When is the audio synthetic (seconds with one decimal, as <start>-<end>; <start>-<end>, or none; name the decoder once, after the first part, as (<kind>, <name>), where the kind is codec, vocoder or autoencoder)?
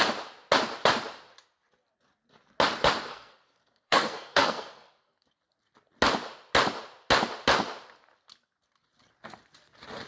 3.1-5.3 (codec, SNAC)